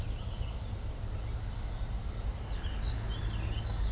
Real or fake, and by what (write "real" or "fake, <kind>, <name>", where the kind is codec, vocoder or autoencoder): real